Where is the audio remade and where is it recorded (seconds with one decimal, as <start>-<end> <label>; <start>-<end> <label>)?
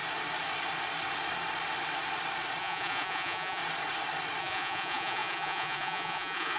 0.0-2.6 recorded; 2.6-3.6 remade; 3.6-4.4 recorded; 4.4-6.6 remade